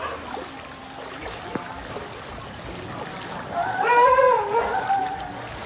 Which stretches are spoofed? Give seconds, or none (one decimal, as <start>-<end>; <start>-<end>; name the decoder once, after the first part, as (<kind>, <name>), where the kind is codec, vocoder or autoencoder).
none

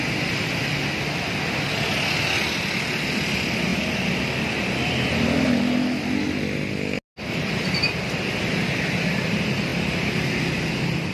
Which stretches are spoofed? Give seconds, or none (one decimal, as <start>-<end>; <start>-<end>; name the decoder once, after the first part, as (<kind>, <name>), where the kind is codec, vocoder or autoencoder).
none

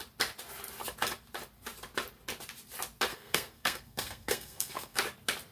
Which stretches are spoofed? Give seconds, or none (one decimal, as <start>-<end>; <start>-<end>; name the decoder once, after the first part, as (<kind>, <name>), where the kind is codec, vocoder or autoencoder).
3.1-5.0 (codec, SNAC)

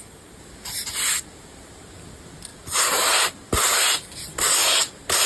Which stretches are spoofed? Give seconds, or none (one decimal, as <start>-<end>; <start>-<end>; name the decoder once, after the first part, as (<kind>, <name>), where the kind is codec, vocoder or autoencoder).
none

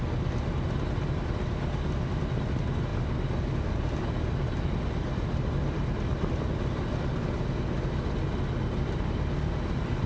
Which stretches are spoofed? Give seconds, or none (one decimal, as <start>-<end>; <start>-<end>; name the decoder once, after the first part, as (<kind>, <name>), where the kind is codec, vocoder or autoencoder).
none